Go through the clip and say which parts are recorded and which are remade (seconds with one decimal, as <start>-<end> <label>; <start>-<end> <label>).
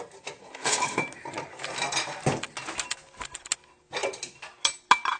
0.0-0.4 recorded; 0.4-1.0 remade; 1.0-5.2 recorded